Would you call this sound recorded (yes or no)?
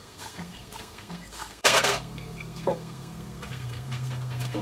no